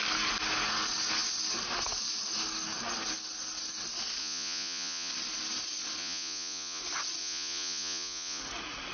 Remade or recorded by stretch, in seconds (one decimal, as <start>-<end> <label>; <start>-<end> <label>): 0.0-4.2 recorded; 4.2-5.1 remade; 5.1-6.0 recorded; 6.0-6.8 remade; 6.8-7.2 recorded; 7.2-8.4 remade; 8.4-8.9 recorded